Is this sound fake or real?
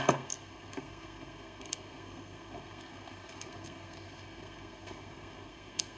fake